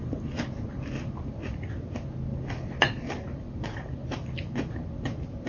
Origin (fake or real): real